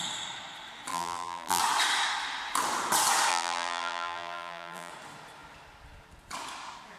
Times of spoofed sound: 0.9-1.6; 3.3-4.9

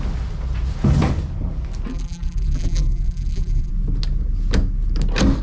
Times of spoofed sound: 1.9-3.7

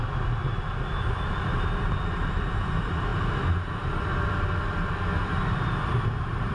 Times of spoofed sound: 0.4-1.0

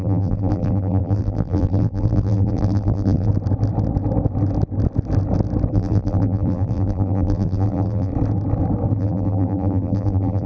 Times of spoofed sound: 0.0-3.3; 5.7-8.1; 9.0-10.5

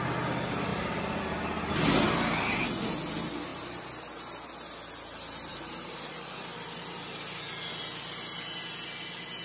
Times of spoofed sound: 0.7-1.2; 3.5-4.7; 5.5-6.4

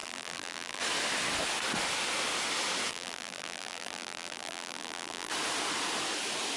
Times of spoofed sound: 0.0-0.8; 2.9-5.3

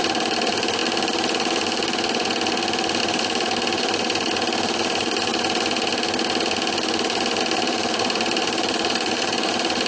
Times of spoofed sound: 0.0-0.8; 3.0-5.3; 7.4-9.9